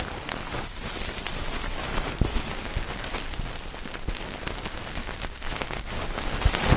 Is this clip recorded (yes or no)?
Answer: yes